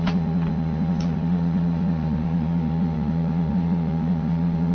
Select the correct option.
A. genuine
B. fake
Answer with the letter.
B